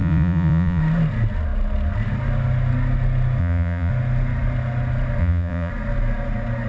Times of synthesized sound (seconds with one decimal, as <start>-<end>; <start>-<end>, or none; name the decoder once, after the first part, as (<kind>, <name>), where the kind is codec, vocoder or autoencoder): 0.0-0.8 (vocoder, Vocos); 3.4-3.9; 5.2-5.7